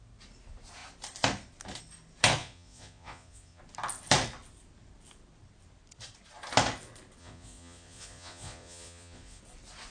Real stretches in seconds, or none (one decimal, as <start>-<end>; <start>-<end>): 0.0-2.4; 3.6-7.2; 9.4-9.9